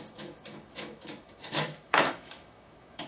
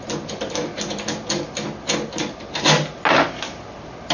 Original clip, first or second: second